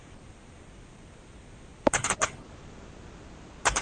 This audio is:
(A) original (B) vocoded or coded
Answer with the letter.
A